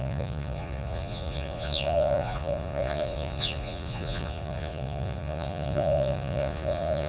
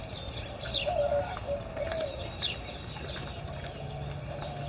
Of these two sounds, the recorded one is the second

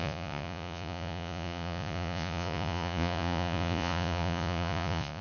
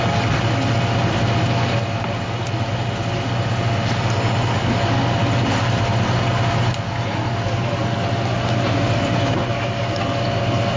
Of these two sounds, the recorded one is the second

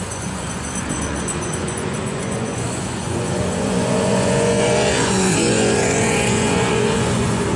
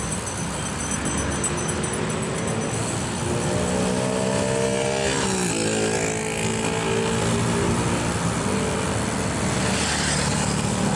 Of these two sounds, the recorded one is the second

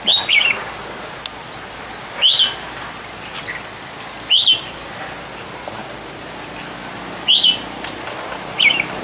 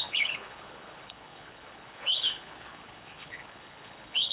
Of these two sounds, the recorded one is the first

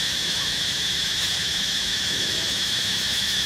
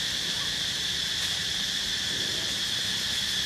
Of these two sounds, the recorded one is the second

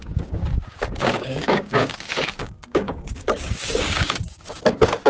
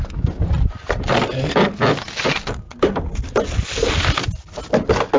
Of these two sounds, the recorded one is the second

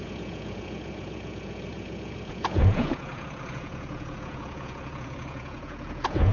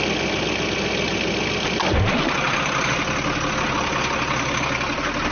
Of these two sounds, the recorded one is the second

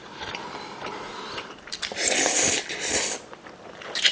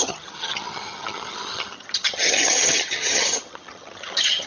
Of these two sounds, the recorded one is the first